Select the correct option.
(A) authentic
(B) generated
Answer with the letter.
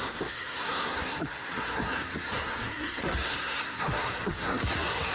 B